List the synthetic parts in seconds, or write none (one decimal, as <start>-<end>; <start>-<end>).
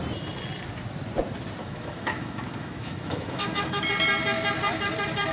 1.6-3.8